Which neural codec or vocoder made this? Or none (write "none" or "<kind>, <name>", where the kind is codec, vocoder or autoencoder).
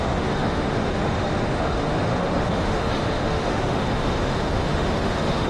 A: autoencoder, DAC-VAE